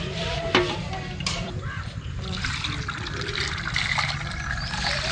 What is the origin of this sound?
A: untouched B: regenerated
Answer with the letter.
B